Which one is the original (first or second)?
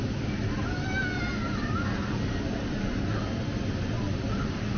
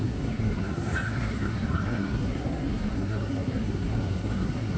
first